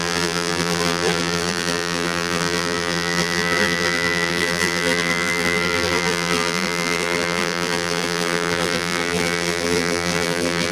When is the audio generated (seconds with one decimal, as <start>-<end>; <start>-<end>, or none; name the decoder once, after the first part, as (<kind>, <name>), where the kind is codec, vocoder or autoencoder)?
0.0-10.7 (vocoder, BigVGAN v2)